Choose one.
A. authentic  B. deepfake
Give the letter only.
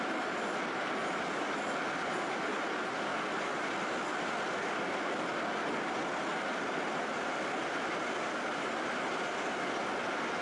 A